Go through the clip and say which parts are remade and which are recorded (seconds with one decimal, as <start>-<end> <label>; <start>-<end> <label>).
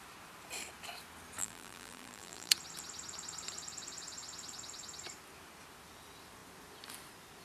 0.0-1.4 recorded; 1.4-2.5 remade; 2.5-7.4 recorded